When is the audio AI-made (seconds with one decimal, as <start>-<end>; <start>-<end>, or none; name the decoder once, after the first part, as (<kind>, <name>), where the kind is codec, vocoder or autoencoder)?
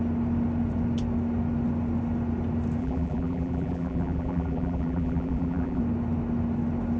2.8-5.8 (vocoder, BigVGAN v2)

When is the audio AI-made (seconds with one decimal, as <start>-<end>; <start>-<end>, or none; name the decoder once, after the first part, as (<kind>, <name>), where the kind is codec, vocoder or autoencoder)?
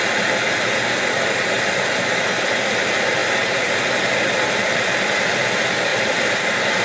3.2-3.8 (vocoder, BigVGAN v2); 5.9-6.8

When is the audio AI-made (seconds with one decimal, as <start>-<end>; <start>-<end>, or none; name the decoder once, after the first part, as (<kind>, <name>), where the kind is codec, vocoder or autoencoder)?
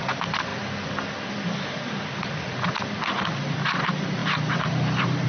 0.0-0.5 (vocoder, BigVGAN v2); 2.7-5.3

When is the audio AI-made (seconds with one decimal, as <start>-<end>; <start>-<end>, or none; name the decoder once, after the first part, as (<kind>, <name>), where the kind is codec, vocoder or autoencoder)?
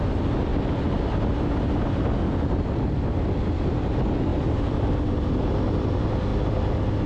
0.5-1.2 (vocoder, BigVGAN v2); 4.3-4.9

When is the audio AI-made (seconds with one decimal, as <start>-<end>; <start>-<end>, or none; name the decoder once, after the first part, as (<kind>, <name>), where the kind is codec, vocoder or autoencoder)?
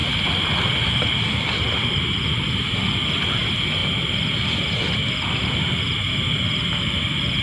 none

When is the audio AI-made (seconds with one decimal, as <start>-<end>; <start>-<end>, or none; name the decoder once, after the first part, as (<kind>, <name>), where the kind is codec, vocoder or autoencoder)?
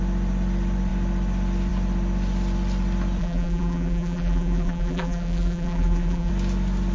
3.2-6.3 (vocoder, BigVGAN v2)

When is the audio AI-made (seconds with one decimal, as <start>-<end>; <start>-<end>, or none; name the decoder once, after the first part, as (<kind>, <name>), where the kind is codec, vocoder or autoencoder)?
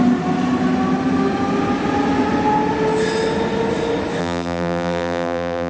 4.2-5.7 (vocoder, BigVGAN v2)